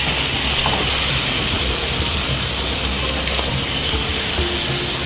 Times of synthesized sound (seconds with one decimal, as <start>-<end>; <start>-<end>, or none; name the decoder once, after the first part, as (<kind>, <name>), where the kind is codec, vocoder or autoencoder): 0.5-2.5 (vocoder, BigVGAN v2); 3.5-4.4